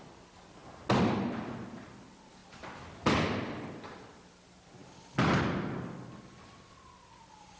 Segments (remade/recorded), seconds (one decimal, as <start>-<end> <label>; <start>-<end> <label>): 0.0-7.6 recorded